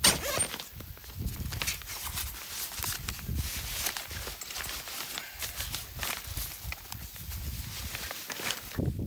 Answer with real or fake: real